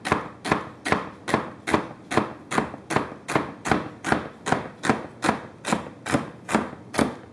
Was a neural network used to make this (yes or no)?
no